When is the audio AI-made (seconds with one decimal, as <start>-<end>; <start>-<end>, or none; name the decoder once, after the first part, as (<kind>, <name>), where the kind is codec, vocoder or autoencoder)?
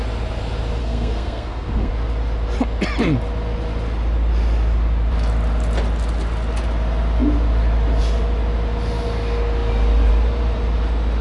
0.8-1.9 (codec, SNAC)